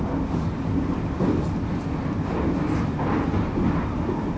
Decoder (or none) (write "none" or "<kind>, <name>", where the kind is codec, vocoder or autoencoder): none